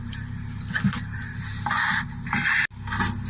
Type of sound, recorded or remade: recorded